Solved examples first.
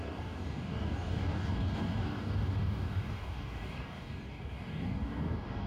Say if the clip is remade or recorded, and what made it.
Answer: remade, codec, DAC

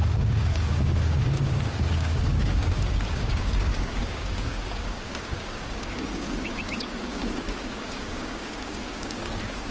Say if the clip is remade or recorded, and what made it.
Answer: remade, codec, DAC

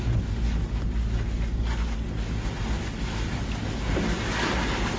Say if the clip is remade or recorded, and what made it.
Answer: recorded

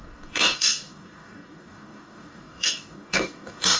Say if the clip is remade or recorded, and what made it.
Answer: remade, codec, DAC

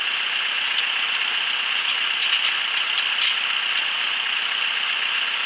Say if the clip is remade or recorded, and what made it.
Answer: recorded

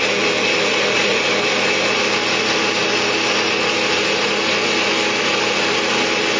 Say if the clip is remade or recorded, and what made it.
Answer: recorded